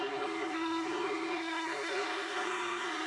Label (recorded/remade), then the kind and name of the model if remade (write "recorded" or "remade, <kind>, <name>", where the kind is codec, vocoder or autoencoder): remade, codec, SNAC